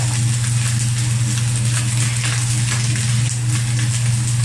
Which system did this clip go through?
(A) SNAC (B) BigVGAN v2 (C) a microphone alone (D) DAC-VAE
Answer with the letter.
C